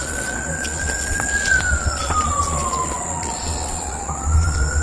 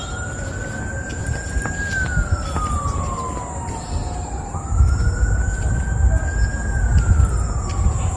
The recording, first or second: second